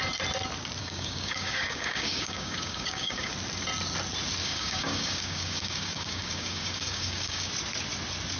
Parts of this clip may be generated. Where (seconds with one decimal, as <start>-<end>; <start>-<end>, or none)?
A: 0.8-3.3; 4.4-7.5

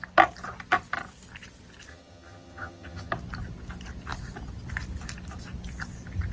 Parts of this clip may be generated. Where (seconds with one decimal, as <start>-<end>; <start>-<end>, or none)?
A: 1.9-3.1

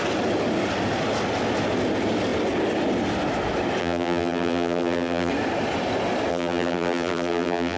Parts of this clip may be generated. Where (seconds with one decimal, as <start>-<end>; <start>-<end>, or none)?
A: 3.8-5.3; 6.3-7.8

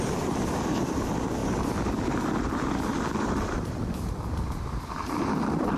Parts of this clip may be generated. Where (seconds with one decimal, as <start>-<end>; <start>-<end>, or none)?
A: 1.4-4.9